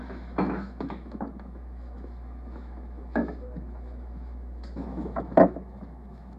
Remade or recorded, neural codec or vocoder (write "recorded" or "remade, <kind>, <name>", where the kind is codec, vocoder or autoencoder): remade, autoencoder, DAC-VAE